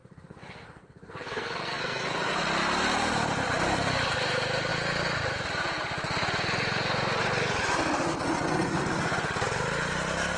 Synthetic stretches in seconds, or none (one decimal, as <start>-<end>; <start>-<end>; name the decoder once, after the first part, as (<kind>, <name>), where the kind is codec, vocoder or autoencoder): 0.0-2.4 (codec, SNAC)